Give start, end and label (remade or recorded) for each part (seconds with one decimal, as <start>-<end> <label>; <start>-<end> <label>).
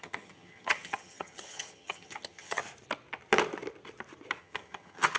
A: 0.0-2.6 remade; 2.6-4.4 recorded; 4.4-5.2 remade